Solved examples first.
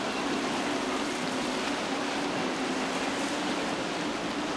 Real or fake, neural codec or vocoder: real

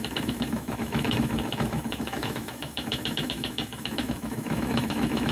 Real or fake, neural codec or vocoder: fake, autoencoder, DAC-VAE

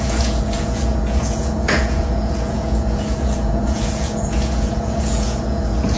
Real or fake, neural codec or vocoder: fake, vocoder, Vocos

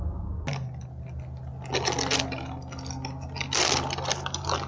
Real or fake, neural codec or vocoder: real